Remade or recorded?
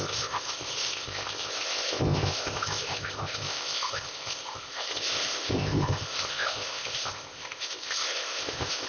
remade